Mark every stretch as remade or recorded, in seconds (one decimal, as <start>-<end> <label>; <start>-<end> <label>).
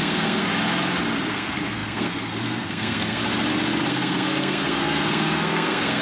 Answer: 0.0-0.5 remade; 0.5-1.3 recorded; 1.3-3.2 remade; 3.2-3.9 recorded; 3.9-6.0 remade